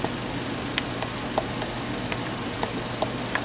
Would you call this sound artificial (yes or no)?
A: no